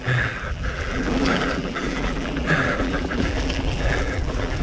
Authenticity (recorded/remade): remade